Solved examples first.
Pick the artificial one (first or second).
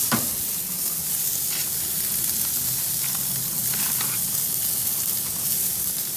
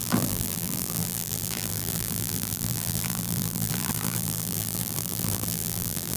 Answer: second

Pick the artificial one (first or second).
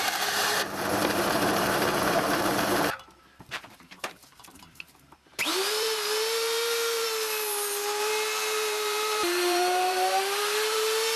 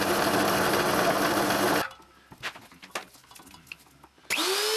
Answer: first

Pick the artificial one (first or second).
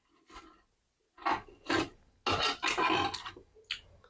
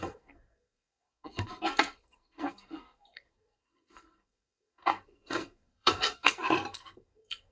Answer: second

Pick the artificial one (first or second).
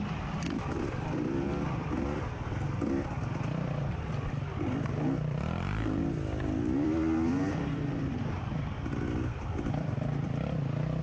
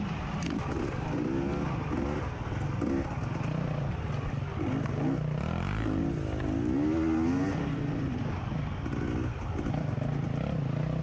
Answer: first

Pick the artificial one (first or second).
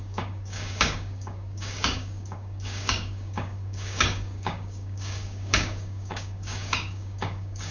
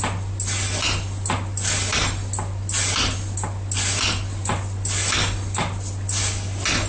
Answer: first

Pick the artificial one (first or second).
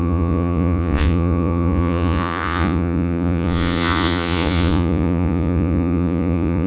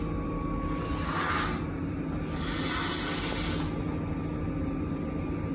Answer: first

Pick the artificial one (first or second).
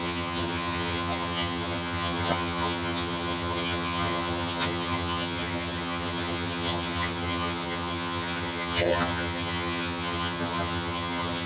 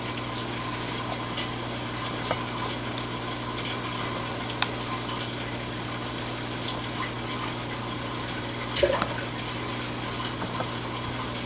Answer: first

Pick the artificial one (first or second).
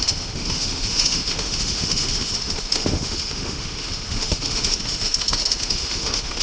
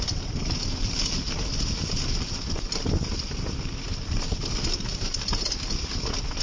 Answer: first